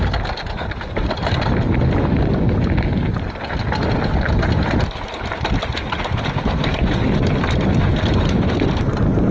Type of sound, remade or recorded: recorded